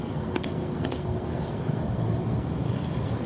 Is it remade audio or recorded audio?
remade